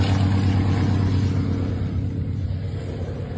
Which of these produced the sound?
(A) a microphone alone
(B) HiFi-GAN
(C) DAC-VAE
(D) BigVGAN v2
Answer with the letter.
A